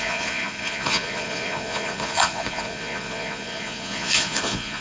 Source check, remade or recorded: remade